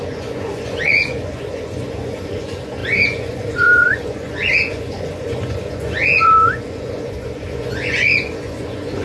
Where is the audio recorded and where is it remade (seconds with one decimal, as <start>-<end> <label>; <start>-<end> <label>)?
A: 0.0-9.0 remade